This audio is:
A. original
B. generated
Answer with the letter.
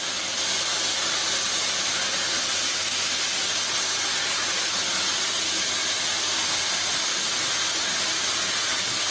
A